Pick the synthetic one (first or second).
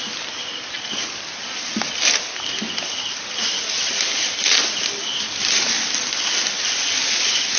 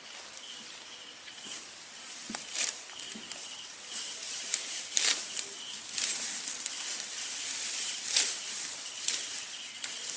second